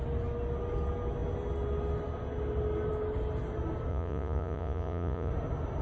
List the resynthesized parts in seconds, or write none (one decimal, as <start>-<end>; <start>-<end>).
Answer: 3.9-5.3